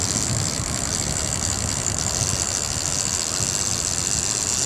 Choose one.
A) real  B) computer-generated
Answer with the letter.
A